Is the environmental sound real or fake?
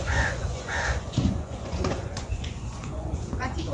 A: fake